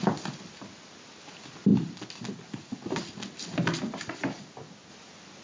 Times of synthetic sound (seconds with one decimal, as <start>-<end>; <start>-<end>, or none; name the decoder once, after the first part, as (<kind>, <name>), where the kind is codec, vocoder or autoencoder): none